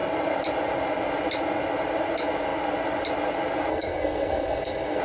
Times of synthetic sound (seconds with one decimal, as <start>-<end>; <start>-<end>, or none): 3.7-5.0